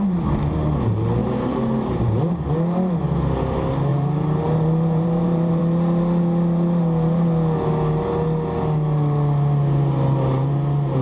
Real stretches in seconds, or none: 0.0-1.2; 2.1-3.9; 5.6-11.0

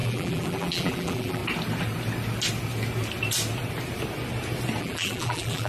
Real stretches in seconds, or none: 1.4-4.8

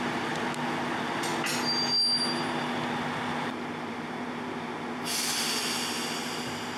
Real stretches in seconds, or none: 0.0-6.8

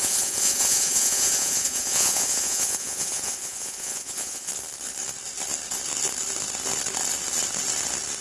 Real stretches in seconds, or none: 4.5-8.2

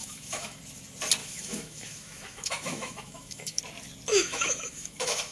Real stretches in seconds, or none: 0.6-1.2; 3.6-4.1

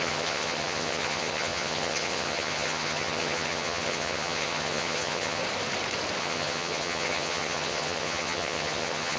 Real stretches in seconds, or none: 5.4-6.2

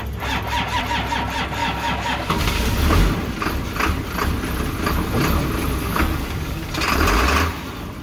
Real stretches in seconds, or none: 0.0-1.6; 2.7-5.8; 6.7-8.0